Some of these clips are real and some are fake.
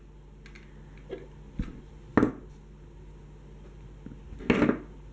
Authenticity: real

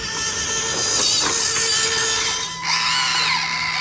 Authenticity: real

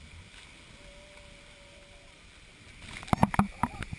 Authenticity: real